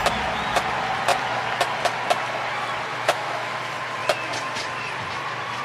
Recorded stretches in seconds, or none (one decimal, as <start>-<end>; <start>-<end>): 0.0-2.9; 3.6-5.6